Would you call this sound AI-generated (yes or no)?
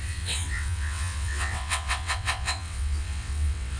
yes